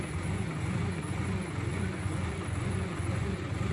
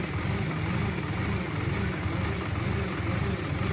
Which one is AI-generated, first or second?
first